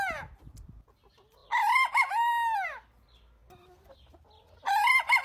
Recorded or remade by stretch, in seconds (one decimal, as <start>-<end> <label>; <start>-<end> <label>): 0.0-5.2 recorded

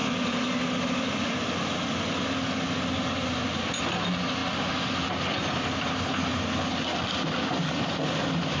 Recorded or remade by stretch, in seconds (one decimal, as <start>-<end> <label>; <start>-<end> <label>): 0.0-8.6 recorded

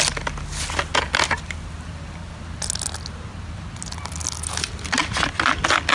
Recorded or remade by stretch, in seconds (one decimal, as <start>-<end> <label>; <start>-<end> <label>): 0.0-5.9 recorded